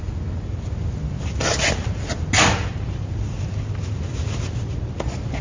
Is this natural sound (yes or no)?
yes